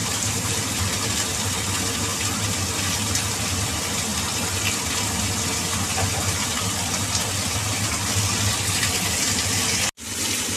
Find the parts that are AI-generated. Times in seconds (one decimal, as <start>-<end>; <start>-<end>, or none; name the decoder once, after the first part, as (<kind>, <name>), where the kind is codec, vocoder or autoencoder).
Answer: 0.0-0.6 (vocoder, BigVGAN v2)